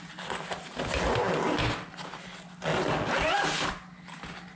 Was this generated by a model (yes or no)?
no